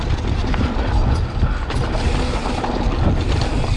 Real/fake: real